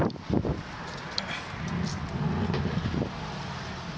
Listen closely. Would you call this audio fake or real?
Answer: real